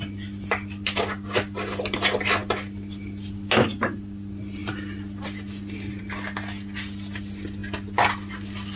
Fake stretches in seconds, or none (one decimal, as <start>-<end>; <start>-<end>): none